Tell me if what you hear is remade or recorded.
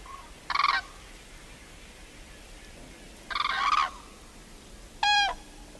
recorded